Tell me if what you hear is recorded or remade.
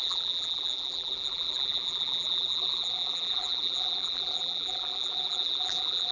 remade